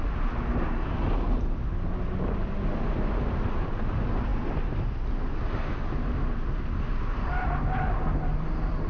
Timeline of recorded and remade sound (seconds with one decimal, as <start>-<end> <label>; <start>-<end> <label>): 0.0-8.9 recorded